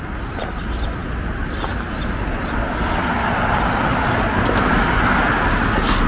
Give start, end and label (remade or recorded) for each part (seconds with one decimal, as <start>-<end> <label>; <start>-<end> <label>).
0.0-6.1 recorded